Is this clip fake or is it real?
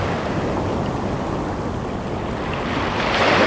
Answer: real